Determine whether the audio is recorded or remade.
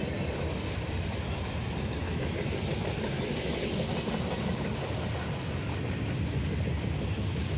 recorded